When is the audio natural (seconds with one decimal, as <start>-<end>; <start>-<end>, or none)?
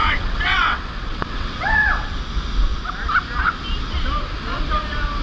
2.2-5.2